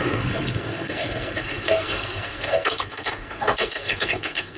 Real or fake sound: fake